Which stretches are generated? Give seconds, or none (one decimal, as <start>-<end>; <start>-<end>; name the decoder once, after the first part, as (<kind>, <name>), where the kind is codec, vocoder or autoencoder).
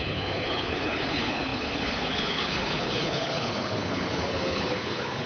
0.0-5.3 (codec, HILCodec)